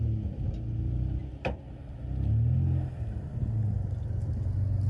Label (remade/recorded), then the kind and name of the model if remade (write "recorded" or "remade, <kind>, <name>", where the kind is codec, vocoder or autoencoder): recorded